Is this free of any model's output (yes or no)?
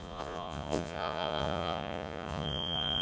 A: no